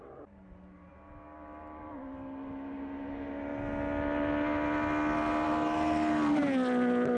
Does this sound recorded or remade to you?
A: recorded